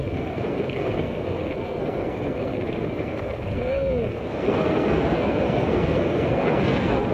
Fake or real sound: fake